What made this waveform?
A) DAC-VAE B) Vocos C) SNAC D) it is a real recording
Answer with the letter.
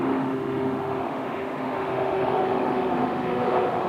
A